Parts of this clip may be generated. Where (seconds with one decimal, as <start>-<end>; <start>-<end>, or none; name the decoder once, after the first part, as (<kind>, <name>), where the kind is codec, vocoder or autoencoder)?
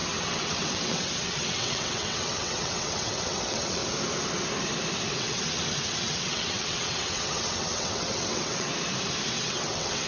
0.0-3.8 (vocoder, WaveNeXt); 5.1-8.7; 9.3-10.1